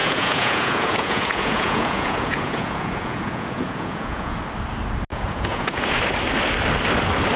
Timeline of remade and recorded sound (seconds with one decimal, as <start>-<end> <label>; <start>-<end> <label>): 0.0-4.4 remade; 4.4-5.1 recorded; 5.1-6.0 remade; 6.0-7.4 recorded